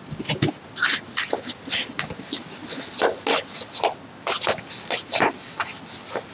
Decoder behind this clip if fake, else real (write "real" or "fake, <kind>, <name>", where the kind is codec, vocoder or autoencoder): real